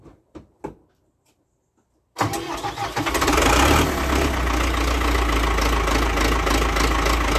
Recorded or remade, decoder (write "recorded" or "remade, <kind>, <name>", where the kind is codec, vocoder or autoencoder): recorded